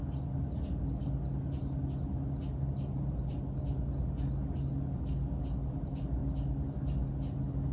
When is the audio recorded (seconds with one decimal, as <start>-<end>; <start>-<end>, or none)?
0.0-7.7